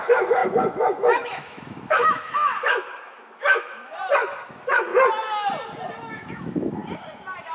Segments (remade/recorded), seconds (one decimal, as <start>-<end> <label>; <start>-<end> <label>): 0.0-3.9 remade; 3.9-4.5 recorded; 4.5-4.9 remade; 4.9-6.0 recorded; 6.0-6.8 remade; 6.8-7.5 recorded